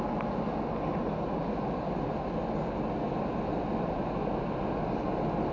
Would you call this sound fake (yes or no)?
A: no